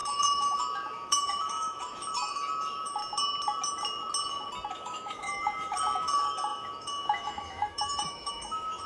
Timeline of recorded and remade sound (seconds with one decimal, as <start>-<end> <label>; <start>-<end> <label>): 0.0-3.0 remade; 3.0-4.7 recorded; 4.7-8.9 remade